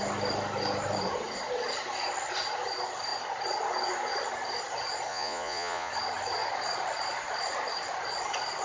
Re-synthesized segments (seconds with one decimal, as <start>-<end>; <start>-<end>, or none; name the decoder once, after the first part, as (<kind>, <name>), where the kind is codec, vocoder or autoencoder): 5.1-5.9 (vocoder, Vocos)